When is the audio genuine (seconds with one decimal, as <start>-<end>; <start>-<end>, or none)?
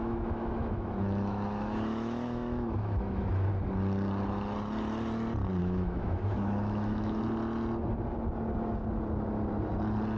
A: 3.5-5.6; 7.2-10.2